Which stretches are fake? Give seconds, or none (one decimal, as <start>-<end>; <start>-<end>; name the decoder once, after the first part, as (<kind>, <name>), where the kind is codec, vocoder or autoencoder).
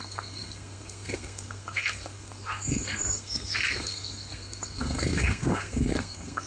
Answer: 0.0-6.5 (codec, SNAC)